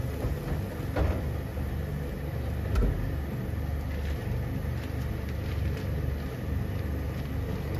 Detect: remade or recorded recorded